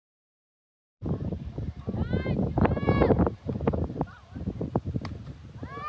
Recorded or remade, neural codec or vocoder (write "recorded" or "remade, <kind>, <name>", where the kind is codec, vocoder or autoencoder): remade, vocoder, BigVGAN v2